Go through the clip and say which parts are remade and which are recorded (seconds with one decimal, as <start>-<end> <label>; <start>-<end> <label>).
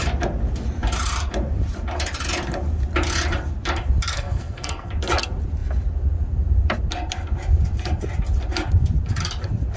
0.0-4.1 recorded; 4.1-4.9 remade; 4.9-9.8 recorded